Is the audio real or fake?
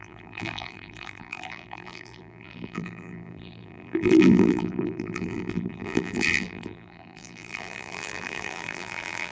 fake